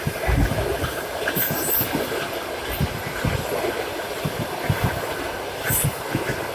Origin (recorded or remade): recorded